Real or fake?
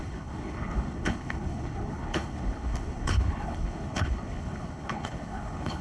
fake